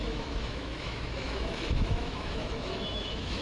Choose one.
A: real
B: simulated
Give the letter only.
B